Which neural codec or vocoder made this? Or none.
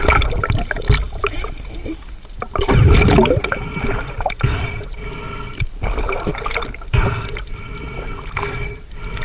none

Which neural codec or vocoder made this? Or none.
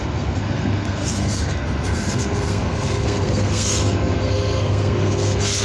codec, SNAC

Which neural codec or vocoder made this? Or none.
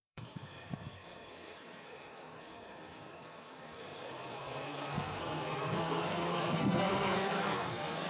codec, SNAC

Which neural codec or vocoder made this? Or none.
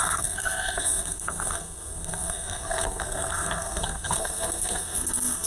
codec, SNAC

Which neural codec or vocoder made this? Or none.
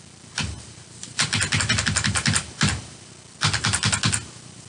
none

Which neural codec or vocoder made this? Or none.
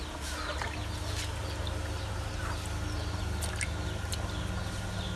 none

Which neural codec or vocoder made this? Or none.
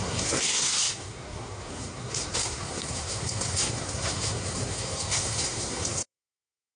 codec, SNAC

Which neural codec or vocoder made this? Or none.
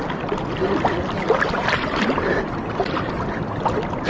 none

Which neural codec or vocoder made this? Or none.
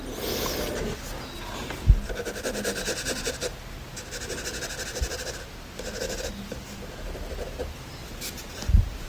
none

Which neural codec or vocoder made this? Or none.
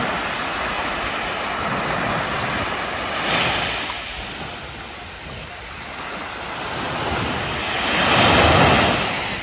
none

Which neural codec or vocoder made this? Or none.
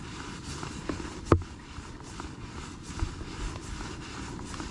none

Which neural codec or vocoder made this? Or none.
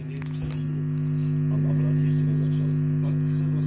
none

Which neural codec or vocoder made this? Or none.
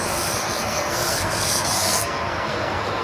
codec, SNAC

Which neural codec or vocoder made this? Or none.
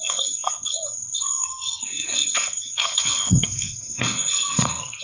codec, SNAC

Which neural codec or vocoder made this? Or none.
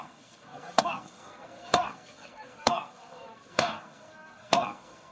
codec, SNAC